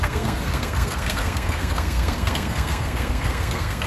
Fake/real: fake